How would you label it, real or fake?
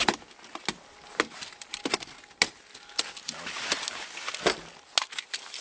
real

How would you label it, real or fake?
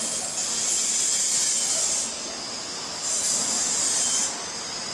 real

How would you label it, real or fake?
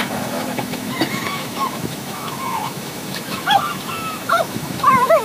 fake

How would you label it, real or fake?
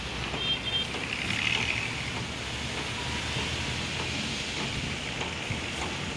real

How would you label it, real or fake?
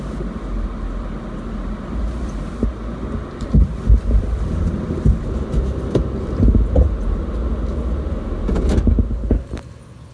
real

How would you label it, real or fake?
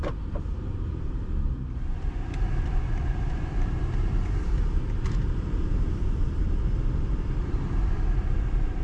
fake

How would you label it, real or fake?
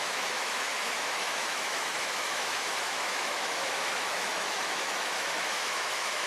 fake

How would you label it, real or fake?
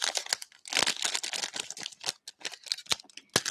real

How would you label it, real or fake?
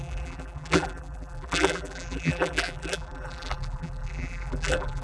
fake